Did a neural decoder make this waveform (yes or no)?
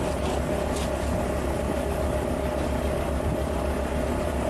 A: no